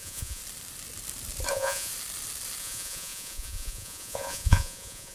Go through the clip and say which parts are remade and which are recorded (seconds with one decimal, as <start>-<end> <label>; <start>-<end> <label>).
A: 0.0-0.4 remade; 0.4-1.5 recorded; 1.5-1.9 remade; 1.9-2.6 recorded; 2.6-5.1 remade